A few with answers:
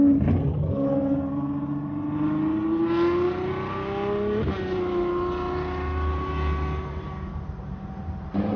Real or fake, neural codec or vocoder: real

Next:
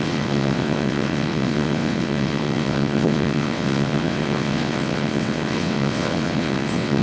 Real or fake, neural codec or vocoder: fake, vocoder, WaveNeXt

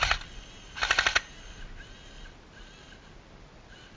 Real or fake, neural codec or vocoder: real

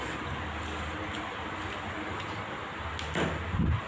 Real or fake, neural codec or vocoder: real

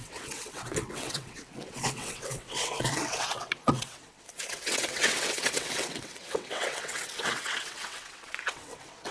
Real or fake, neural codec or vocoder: fake, vocoder, WaveNeXt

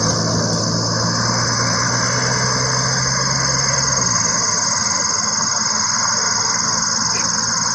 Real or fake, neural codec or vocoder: real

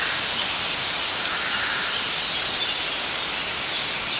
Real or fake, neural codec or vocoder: real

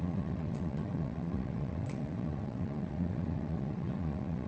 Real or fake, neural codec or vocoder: fake, vocoder, WaveNeXt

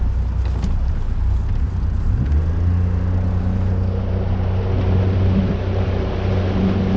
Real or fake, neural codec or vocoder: real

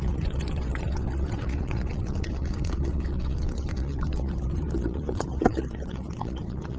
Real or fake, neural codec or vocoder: fake, vocoder, WaveNeXt